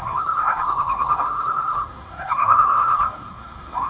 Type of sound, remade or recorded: remade